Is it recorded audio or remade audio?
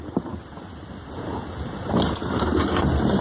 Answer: recorded